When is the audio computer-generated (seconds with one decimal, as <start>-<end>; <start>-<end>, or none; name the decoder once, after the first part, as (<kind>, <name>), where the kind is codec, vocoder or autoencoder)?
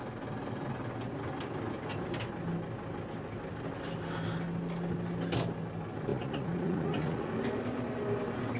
6.1-7.3 (vocoder, Vocos)